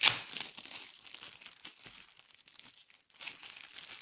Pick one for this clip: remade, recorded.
recorded